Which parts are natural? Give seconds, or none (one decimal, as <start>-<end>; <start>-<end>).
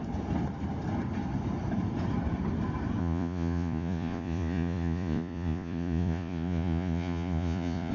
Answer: 0.0-3.0